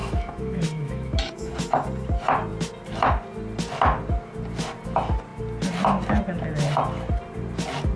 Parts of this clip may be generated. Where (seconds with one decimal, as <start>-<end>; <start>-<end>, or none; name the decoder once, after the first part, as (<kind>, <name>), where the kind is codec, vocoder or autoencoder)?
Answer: 0.0-1.5 (autoencoder, DAC-VAE)

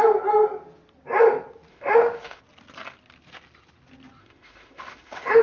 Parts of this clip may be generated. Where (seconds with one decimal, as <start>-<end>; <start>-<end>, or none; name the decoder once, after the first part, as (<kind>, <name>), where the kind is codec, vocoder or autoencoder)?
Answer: 1.7-2.4 (autoencoder, DAC-VAE); 4.2-5.4

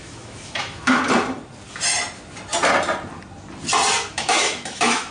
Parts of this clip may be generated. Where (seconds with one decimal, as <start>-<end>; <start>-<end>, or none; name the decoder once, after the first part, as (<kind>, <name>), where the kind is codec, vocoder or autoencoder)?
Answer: 0.0-1.0 (autoencoder, DAC-VAE); 4.1-5.1

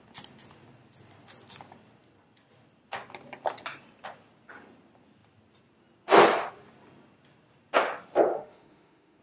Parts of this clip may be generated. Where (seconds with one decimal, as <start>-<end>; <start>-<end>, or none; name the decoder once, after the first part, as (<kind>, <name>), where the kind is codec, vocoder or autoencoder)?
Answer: 8.3-9.2 (autoencoder, DAC-VAE)

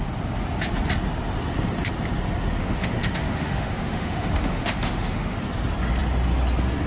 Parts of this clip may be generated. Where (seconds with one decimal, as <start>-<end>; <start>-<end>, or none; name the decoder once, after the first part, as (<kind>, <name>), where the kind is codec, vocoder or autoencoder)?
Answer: 2.6-5.4 (autoencoder, DAC-VAE)

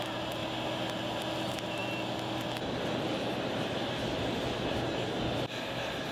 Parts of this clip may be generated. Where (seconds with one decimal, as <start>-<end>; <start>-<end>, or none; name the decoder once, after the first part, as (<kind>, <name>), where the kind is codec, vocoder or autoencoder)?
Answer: none